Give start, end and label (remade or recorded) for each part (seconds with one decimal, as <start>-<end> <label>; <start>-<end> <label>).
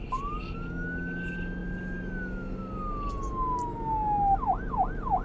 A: 0.0-5.2 recorded